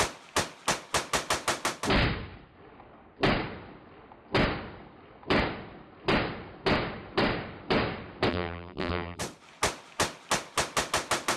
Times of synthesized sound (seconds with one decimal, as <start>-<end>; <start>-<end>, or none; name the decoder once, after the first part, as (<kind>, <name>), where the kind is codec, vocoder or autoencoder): 8.3-9.2 (vocoder, BigVGAN v2)